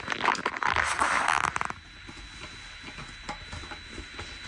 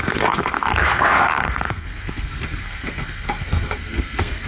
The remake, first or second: second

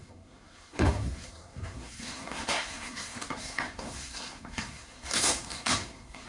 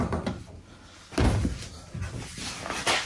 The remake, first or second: first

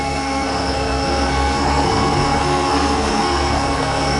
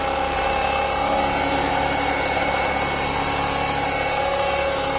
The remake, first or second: first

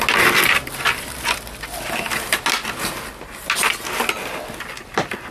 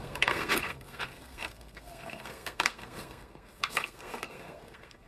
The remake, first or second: second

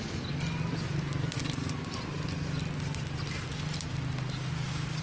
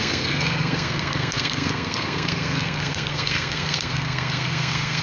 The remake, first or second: second